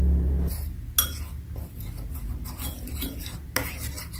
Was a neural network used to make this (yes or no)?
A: no